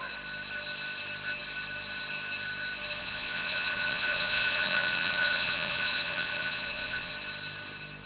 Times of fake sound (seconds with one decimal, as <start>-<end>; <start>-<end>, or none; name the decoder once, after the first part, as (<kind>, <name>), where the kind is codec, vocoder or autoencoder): 3.0-7.1 (vocoder, Vocos)